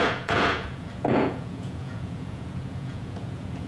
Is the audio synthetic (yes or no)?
yes